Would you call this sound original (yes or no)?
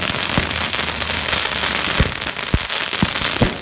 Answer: yes